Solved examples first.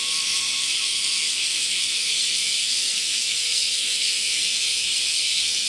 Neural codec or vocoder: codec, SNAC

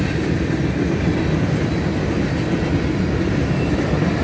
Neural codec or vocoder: none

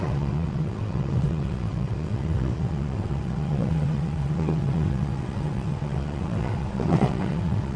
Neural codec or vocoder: vocoder, WaveNeXt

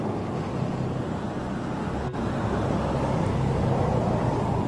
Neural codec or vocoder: none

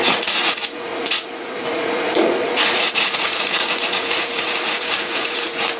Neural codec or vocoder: vocoder, Vocos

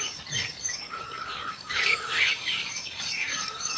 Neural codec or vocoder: codec, DAC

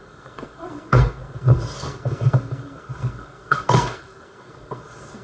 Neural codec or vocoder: codec, SNAC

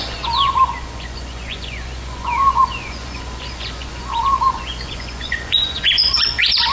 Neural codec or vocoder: vocoder, Vocos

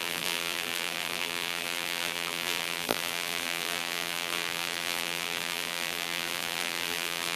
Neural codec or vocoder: vocoder, BigVGAN v2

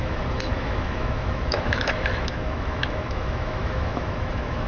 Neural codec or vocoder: autoencoder, DAC-VAE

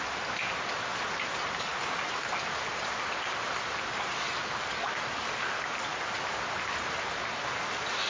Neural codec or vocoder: none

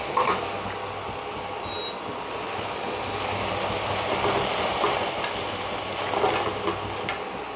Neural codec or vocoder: none